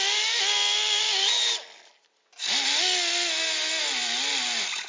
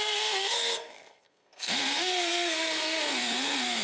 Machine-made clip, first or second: second